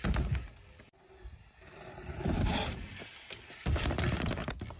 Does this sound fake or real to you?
real